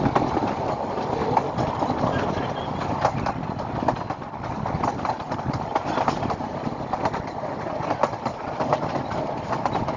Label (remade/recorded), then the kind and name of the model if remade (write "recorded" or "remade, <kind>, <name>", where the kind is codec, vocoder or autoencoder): recorded